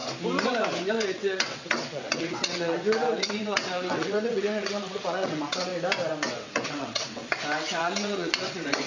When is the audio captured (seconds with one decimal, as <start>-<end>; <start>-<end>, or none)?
0.0-0.9; 5.7-6.3; 7.2-7.8